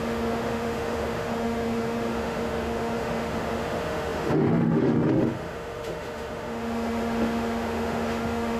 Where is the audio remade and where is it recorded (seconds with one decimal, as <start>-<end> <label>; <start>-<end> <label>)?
0.0-8.6 remade